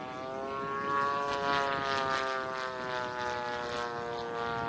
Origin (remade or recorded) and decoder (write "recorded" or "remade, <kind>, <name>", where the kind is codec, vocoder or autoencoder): recorded